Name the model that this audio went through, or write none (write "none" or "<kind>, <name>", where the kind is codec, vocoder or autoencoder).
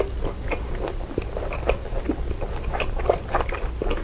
none